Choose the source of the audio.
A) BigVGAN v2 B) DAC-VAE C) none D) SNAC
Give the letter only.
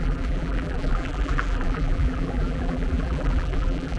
A